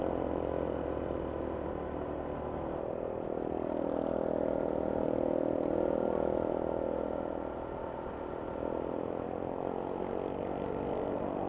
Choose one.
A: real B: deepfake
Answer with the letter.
A